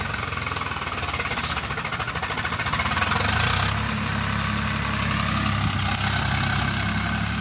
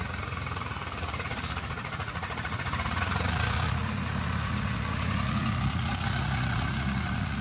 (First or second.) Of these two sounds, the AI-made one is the second